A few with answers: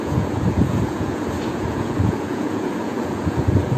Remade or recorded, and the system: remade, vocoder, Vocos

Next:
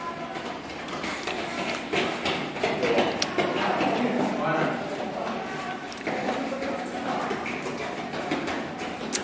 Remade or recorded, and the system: recorded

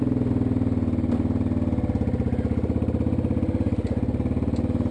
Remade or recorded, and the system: recorded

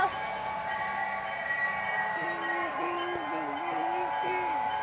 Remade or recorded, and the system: recorded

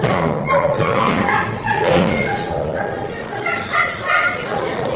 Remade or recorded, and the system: remade, vocoder, Vocos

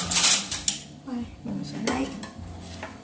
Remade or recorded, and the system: recorded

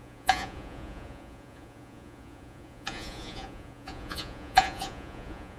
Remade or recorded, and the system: remade, vocoder, Vocos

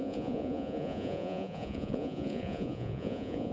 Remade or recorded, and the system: remade, vocoder, Vocos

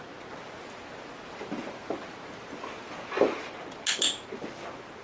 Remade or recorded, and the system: recorded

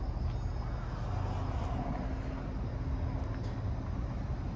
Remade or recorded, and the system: recorded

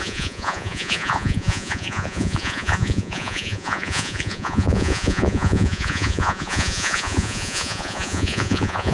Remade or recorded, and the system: remade, vocoder, Vocos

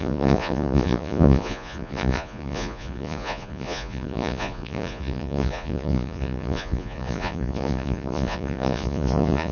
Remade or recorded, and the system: remade, vocoder, Vocos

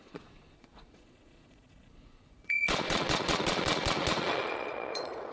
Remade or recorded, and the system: remade, vocoder, Vocos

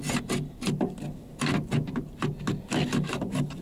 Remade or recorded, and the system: recorded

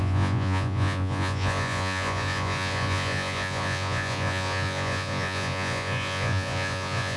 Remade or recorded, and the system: remade, vocoder, Vocos